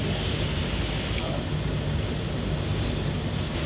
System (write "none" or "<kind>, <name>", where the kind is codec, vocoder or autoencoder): none